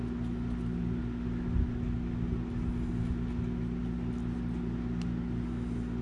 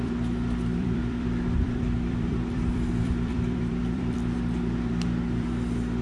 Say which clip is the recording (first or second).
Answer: first